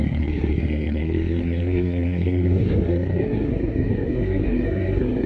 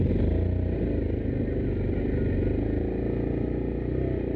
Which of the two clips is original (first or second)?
second